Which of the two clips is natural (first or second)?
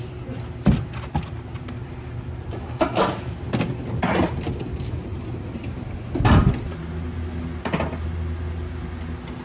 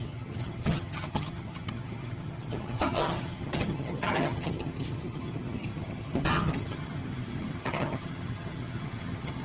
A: first